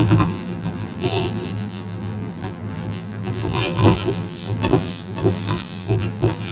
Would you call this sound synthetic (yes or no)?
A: yes